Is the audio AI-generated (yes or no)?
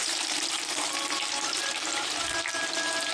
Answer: yes